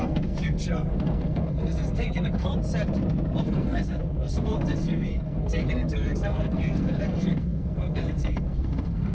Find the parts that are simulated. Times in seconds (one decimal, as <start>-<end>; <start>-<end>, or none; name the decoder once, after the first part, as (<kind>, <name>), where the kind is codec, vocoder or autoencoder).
0.0-2.5 (codec, SNAC); 3.4-9.1